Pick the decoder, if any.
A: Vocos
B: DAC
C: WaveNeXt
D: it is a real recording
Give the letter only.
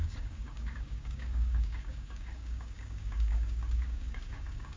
B